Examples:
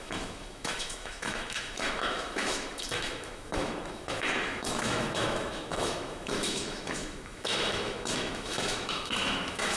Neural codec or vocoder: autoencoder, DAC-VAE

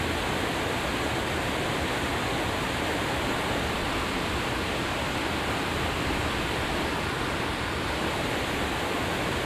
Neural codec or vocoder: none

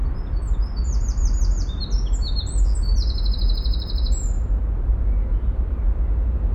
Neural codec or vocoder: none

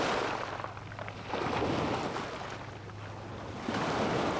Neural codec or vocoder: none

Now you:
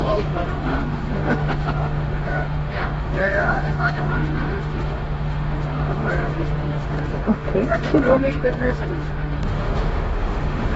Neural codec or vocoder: autoencoder, DAC-VAE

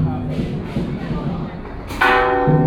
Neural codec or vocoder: none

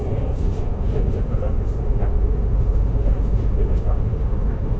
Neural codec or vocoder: autoencoder, DAC-VAE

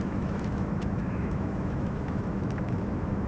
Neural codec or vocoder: autoencoder, DAC-VAE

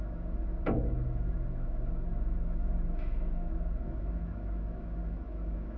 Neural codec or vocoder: autoencoder, DAC-VAE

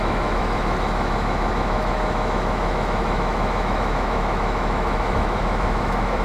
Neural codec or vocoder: autoencoder, DAC-VAE